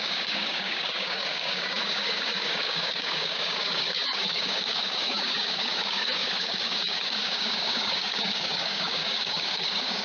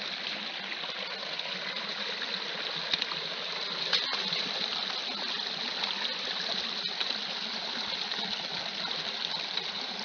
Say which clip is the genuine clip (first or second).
second